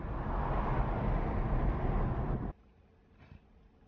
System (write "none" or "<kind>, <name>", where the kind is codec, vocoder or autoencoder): none